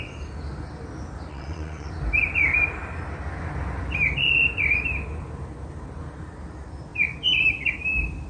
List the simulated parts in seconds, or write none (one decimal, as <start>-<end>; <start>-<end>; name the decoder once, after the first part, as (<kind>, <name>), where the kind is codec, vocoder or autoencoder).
1.3-1.9 (vocoder, WaveNeXt)